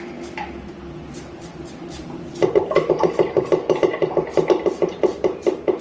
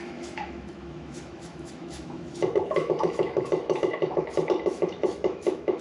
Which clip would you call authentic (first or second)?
first